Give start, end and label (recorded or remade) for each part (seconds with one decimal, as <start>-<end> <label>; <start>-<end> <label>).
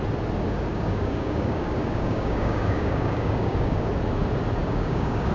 0.0-0.7 recorded; 0.7-3.9 remade; 3.9-4.6 recorded; 4.6-5.3 remade